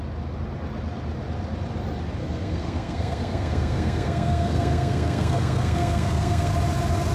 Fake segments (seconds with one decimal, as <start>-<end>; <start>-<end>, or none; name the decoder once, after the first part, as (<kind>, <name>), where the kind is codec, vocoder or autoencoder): 2.2-6.5 (codec, SNAC)